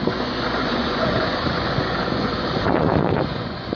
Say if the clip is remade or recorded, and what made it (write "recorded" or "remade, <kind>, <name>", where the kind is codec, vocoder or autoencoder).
remade, vocoder, Vocos